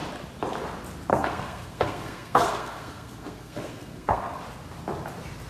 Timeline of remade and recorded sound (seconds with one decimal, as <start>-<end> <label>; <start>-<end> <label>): 0.0-1.1 recorded; 1.1-4.4 remade; 4.4-5.5 recorded